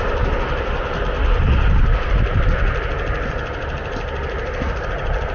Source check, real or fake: real